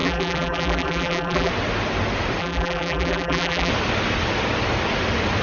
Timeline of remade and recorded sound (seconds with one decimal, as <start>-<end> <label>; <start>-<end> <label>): 0.0-1.5 remade; 1.5-2.4 recorded; 2.4-3.7 remade; 3.7-5.4 recorded

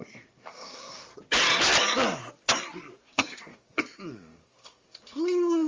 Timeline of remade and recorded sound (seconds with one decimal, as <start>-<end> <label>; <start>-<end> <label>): 0.0-1.1 remade; 1.1-3.0 recorded; 3.0-5.7 remade

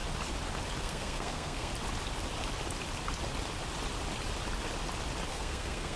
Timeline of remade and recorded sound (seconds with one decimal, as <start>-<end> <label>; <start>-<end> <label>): 0.0-0.8 recorded; 0.8-1.7 remade; 1.7-5.3 recorded; 5.3-6.0 remade

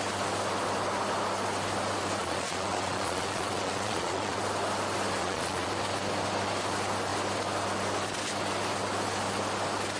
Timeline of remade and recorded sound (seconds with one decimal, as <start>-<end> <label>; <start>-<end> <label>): 0.0-2.2 recorded; 2.2-4.4 remade; 4.4-5.2 recorded; 5.2-5.7 remade; 5.7-10.0 recorded

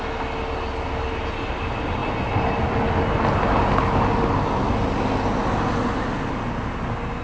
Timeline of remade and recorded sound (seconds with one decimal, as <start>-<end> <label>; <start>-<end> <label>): 0.0-7.2 recorded

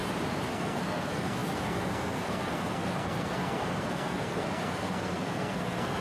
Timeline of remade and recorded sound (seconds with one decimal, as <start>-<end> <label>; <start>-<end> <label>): 0.0-0.5 recorded; 0.5-6.0 remade

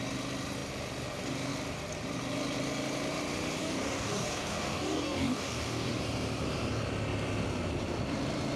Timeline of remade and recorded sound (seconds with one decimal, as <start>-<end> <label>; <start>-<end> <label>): 0.0-3.6 recorded; 3.6-6.0 remade; 6.0-8.6 recorded

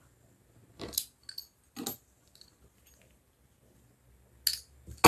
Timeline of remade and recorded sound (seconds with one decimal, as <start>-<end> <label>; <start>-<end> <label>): 0.0-5.1 recorded